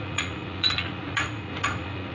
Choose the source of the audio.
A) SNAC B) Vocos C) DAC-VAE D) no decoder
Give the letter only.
B